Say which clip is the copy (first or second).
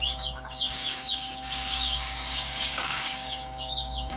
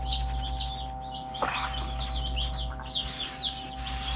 first